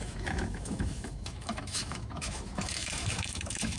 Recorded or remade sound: remade